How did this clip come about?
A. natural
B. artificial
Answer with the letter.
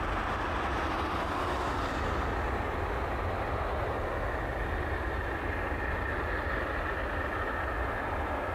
A